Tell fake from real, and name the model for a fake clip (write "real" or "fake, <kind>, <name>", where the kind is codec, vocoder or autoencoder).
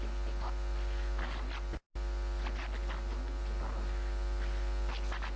real